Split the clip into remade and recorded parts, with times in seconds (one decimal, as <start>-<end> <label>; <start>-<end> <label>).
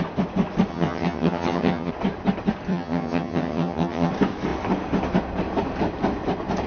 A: 0.0-0.7 recorded; 0.7-1.9 remade; 1.9-2.7 recorded; 2.7-4.1 remade; 4.1-6.7 recorded